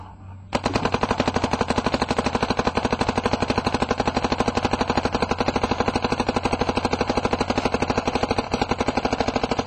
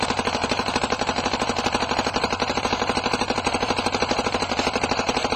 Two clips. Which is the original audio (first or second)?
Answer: first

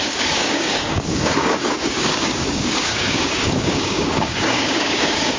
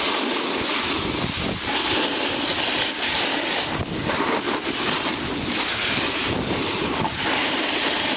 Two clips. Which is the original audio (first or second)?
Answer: second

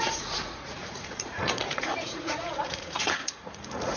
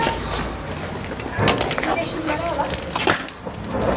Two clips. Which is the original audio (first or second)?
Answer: second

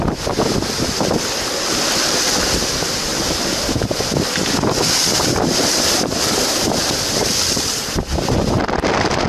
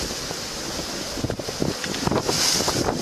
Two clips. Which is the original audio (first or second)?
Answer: second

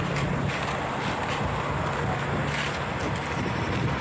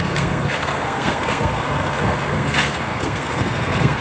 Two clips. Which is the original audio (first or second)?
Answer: first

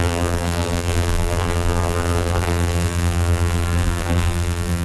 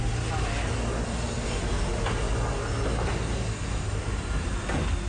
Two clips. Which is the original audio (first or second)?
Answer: second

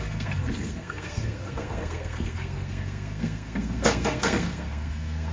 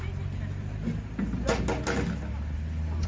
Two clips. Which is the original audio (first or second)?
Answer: second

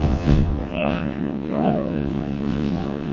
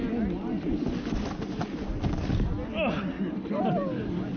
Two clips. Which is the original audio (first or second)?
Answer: second